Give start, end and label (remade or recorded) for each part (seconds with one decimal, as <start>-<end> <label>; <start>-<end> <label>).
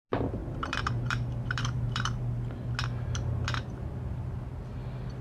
0.0-0.4 recorded; 0.4-2.2 remade; 2.2-5.2 recorded